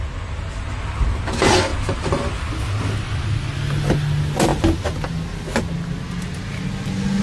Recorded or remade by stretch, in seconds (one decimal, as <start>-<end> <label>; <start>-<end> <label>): 0.0-7.2 recorded